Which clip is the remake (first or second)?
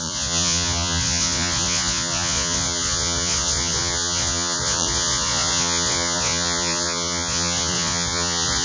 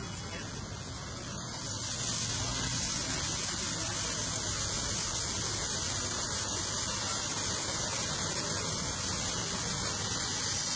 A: first